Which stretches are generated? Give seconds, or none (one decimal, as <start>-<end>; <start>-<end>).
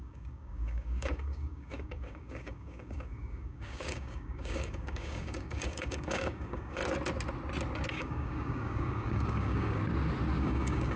0.0-6.8; 7.9-9.8; 10.4-11.0